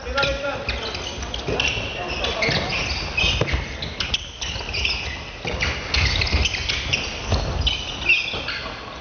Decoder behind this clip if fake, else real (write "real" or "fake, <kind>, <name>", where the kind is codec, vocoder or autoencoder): real